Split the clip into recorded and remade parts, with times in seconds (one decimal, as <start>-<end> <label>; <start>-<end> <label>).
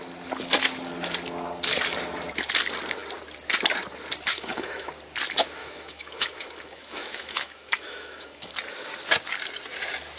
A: 0.0-4.3 recorded; 4.3-4.9 remade; 4.9-5.6 recorded; 5.6-8.5 remade; 8.5-10.2 recorded